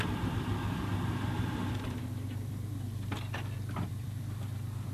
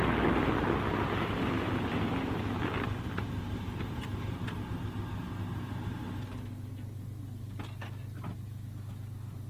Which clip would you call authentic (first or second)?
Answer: second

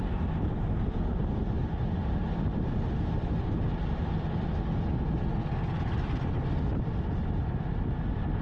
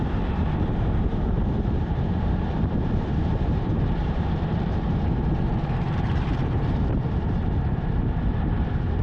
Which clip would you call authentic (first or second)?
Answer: first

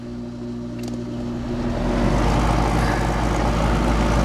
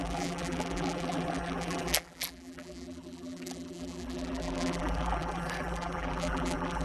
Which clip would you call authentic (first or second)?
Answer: first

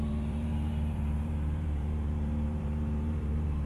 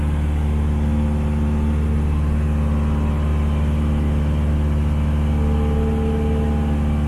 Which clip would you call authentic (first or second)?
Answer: second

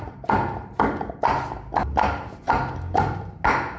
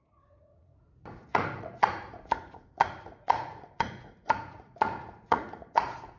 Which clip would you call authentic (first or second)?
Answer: first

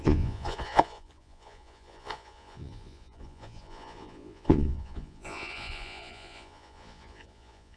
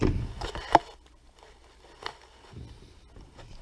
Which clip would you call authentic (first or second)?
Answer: second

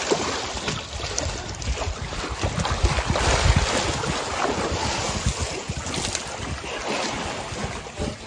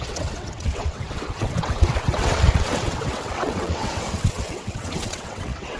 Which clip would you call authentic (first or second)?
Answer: first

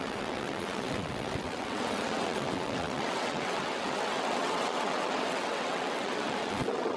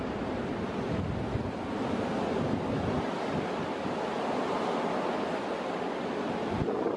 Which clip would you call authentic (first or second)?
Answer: second